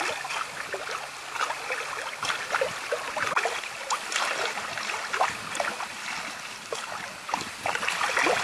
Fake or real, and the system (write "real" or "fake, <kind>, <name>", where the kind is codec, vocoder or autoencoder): real